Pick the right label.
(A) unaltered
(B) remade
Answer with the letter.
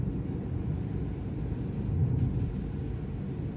A